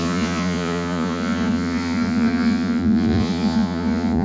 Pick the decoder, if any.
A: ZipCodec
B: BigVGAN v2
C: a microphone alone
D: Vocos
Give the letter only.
D